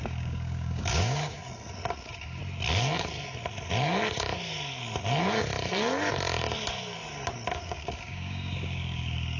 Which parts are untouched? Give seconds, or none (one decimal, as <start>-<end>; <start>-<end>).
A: 1.4-2.0; 2.4-7.5